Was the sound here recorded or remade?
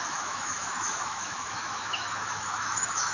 remade